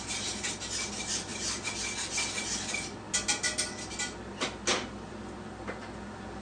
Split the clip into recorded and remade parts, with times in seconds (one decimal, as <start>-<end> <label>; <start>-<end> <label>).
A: 0.0-6.4 recorded